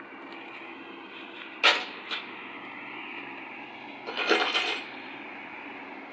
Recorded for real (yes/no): yes